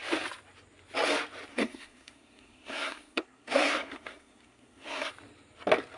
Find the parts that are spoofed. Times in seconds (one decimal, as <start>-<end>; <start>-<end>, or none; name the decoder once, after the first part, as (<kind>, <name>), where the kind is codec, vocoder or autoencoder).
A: 1.5-5.1 (codec, SNAC)